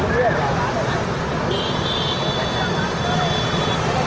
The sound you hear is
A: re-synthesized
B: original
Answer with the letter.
B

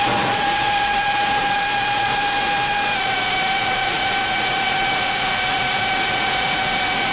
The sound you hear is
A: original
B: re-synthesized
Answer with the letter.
B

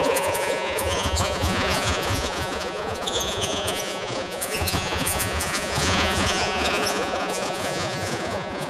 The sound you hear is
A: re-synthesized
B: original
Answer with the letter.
A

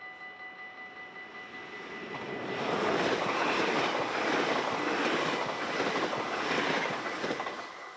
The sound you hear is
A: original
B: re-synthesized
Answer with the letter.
A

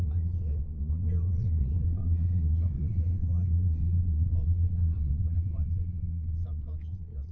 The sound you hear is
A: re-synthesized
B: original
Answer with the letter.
A